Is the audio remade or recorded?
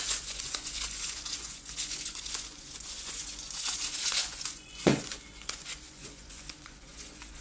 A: remade